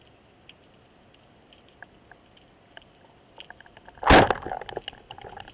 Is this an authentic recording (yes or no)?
yes